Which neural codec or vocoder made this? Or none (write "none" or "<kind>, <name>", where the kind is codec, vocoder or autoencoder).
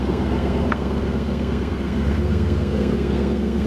codec, SNAC